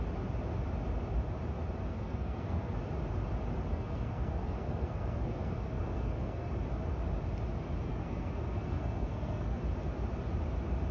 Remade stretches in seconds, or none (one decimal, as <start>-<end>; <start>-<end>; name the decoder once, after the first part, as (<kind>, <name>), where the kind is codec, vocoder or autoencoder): 1.9-2.8 (codec, SNAC); 3.7-6.5; 7.9-9.6